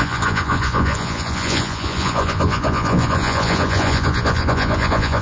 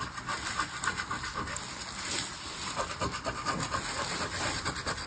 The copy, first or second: first